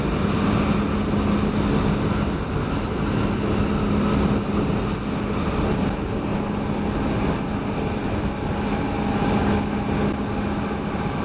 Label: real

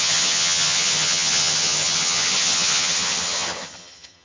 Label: fake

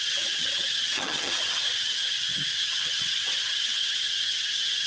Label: fake